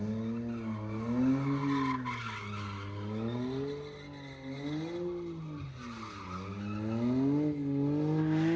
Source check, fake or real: real